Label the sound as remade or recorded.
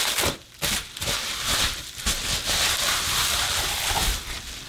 remade